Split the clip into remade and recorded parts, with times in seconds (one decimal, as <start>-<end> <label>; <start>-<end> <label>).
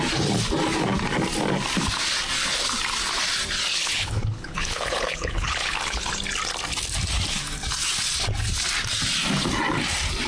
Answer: 0.0-3.7 recorded; 3.7-6.1 remade; 6.1-10.3 recorded